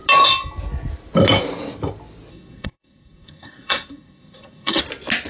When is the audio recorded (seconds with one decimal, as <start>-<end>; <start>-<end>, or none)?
0.0-2.3; 4.8-5.3